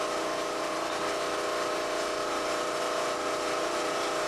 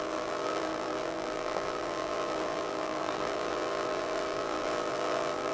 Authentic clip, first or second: first